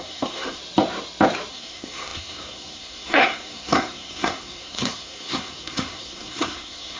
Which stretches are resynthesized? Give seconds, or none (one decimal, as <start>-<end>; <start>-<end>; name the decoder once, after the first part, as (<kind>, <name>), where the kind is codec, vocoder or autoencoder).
0.0-0.6 (codec, SNAC); 1.5-7.0